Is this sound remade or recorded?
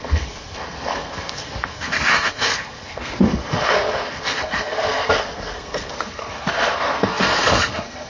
remade